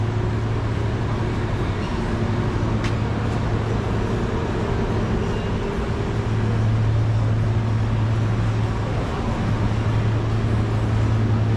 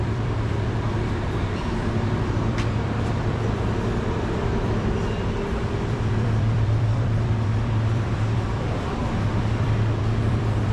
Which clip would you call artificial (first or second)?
second